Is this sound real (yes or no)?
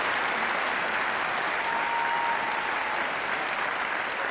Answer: yes